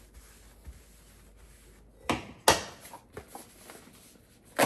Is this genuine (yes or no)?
yes